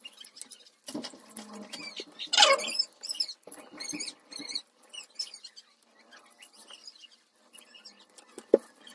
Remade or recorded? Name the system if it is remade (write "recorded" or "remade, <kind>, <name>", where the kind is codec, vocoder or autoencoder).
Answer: recorded